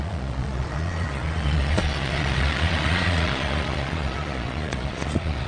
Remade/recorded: remade